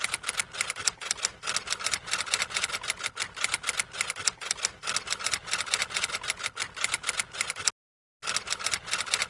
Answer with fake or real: real